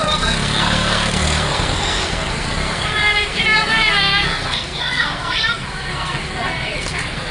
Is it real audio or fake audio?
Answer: fake